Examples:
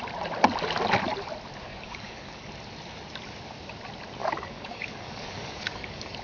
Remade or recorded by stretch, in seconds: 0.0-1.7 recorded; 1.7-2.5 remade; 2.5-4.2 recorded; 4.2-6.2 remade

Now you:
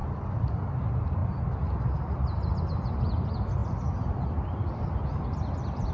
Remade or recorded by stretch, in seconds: 0.0-0.7 remade; 0.7-3.6 recorded; 3.6-4.7 remade; 4.7-5.9 recorded

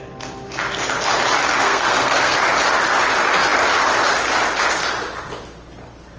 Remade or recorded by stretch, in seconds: 0.0-1.6 recorded; 1.6-2.4 remade; 2.4-6.2 recorded

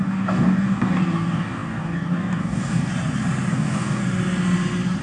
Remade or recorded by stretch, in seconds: 0.0-2.9 remade; 2.9-3.5 recorded; 3.5-4.0 remade; 4.0-5.0 recorded

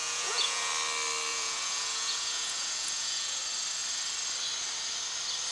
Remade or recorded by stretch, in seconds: 0.0-0.7 remade; 0.7-1.3 recorded; 1.3-3.4 remade; 3.4-5.5 recorded

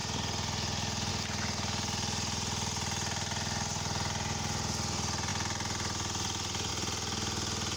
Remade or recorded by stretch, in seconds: 0.0-7.8 recorded